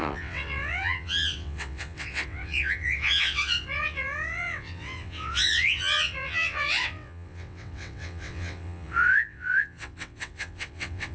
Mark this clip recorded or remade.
remade